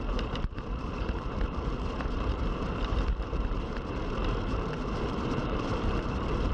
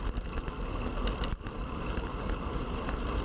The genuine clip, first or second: second